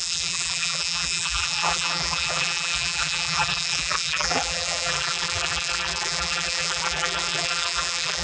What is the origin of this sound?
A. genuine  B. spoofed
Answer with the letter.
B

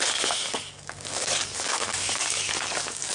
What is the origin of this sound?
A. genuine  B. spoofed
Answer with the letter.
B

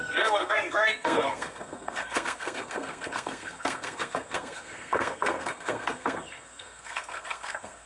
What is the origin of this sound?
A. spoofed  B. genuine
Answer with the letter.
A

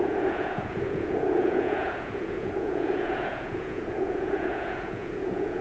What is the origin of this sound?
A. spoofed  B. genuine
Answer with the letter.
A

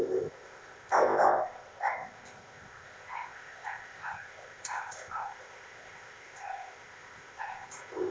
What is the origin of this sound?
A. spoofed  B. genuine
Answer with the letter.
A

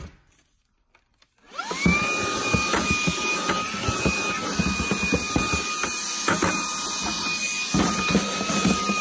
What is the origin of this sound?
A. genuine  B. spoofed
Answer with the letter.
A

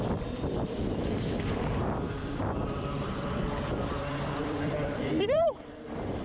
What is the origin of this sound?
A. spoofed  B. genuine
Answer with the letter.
A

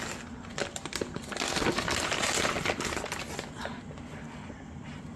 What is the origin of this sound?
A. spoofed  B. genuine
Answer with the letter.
B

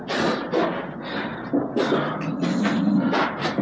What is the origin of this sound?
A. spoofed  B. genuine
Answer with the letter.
B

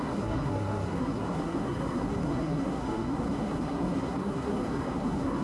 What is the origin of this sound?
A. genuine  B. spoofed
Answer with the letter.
B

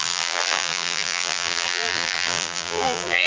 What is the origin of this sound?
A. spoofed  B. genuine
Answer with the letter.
A